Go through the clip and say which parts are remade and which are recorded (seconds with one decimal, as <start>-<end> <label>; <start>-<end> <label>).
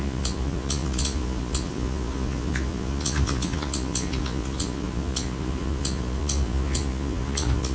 0.0-7.7 remade